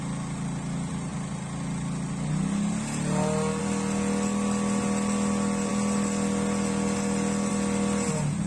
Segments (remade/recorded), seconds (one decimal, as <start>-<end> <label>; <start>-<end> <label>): 0.0-8.5 recorded